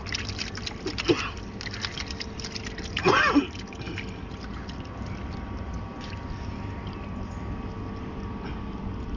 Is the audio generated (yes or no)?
no